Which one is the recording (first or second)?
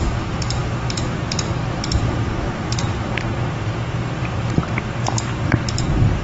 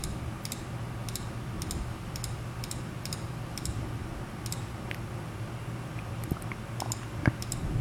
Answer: second